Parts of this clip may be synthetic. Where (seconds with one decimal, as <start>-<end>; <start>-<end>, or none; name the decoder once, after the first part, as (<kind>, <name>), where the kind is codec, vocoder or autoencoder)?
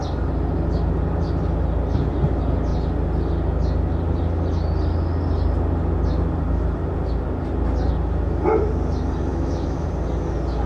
9.3-9.9 (autoencoder, DAC-VAE)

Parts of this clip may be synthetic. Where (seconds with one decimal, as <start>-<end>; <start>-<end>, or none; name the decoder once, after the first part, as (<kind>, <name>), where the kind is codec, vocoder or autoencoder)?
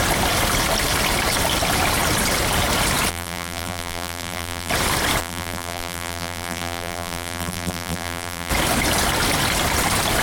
3.1-4.7 (vocoder, BigVGAN v2); 5.2-8.5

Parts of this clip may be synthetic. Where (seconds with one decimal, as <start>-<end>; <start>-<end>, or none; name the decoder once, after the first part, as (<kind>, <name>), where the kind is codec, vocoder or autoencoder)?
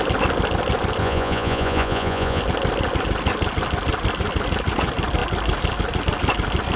1.0-2.4 (vocoder, Vocos)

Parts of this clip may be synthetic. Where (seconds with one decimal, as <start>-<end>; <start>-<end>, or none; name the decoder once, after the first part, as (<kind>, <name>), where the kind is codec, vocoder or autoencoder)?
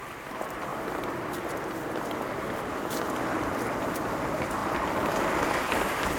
0.0-0.7 (vocoder, BigVGAN v2); 3.3-4.6; 5.4-6.2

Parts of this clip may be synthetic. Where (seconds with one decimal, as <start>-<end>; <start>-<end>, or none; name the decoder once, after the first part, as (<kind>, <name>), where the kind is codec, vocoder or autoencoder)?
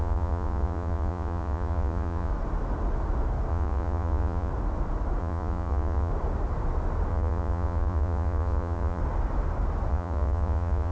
0.0-2.3 (vocoder, Vocos); 3.5-4.5; 5.2-6.1; 7.1-9.0; 9.9-10.9